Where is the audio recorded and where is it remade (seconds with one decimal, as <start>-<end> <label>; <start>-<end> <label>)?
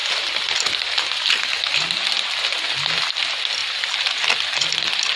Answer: 0.0-5.2 recorded